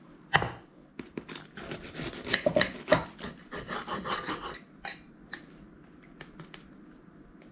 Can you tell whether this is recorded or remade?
recorded